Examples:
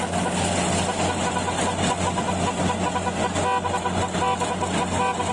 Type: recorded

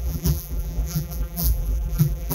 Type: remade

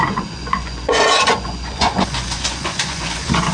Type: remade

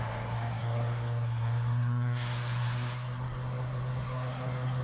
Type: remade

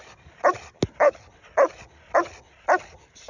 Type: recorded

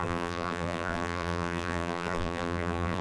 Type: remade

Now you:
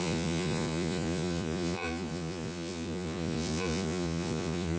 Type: remade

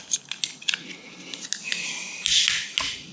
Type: recorded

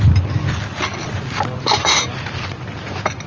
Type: recorded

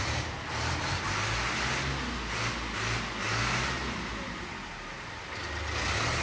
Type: recorded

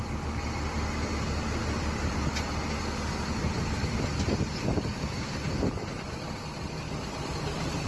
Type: recorded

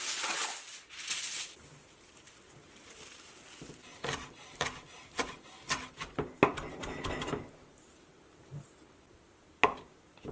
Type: recorded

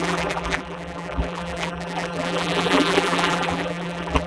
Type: remade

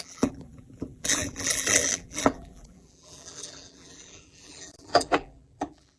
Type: remade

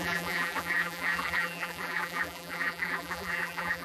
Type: remade